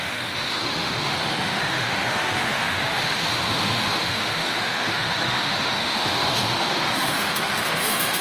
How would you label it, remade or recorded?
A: remade